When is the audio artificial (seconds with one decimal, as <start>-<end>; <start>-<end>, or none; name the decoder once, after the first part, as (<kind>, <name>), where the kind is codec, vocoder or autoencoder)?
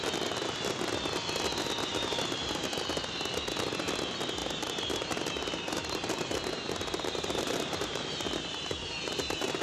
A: 1.9-2.8 (vocoder, BigVGAN v2); 4.4-9.6